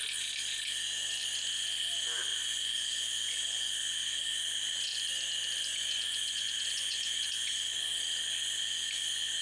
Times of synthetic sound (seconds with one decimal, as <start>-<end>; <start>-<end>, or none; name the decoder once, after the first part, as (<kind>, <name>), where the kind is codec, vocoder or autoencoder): 2.3-3.7 (vocoder, Vocos); 5.7-7.7